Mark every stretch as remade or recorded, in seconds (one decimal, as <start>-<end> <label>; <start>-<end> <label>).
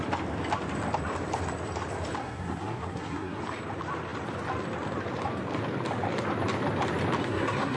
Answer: 0.0-2.2 recorded; 2.2-3.4 remade; 3.4-7.2 recorded; 7.2-7.8 remade